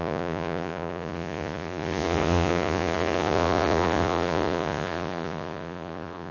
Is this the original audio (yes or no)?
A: no